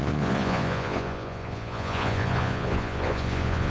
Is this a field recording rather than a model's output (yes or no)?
no